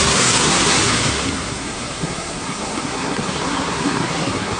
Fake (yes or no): yes